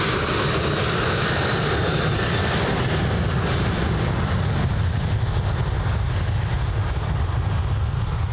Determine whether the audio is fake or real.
real